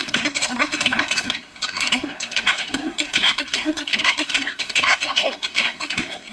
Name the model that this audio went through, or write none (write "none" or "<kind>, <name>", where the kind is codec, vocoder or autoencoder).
codec, SNAC